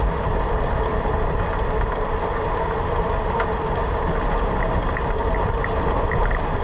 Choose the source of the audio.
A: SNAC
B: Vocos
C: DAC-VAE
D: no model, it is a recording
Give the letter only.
D